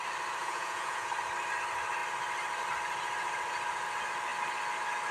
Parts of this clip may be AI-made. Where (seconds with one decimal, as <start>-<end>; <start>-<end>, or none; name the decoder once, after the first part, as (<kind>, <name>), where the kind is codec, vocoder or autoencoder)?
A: 0.4-1.1 (vocoder, Vocos)